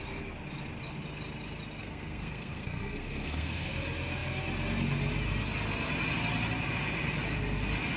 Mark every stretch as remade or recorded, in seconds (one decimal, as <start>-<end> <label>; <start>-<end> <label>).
0.0-1.8 recorded; 1.8-3.7 remade; 3.7-8.0 recorded